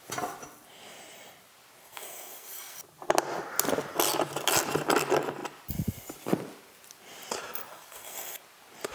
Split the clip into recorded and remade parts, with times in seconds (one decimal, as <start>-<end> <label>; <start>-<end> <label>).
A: 0.0-1.8 recorded; 1.8-2.8 remade; 2.8-7.7 recorded; 7.7-8.4 remade; 8.4-8.9 recorded